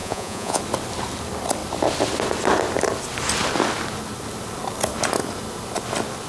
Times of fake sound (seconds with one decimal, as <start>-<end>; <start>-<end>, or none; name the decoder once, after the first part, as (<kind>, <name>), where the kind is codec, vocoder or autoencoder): 0.0-0.6 (vocoder, Vocos)